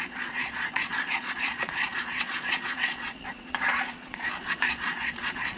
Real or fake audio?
fake